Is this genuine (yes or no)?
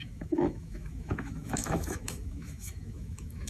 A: no